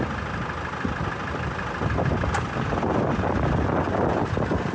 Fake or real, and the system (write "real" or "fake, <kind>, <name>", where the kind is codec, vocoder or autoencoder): real